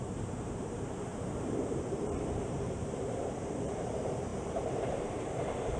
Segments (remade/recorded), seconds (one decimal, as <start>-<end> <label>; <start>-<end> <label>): 0.0-4.3 remade; 4.3-5.0 recorded; 5.0-5.8 remade